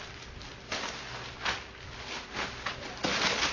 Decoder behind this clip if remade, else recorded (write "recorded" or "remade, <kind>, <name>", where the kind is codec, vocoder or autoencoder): recorded